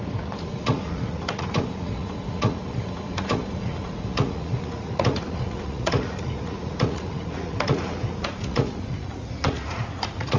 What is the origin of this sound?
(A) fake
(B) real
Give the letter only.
A